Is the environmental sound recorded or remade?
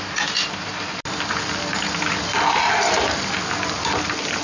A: recorded